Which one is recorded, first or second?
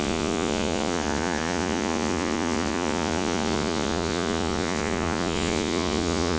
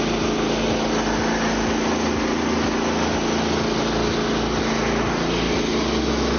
second